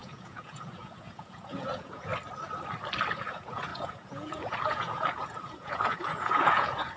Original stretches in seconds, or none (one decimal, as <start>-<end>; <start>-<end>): 2.1-3.1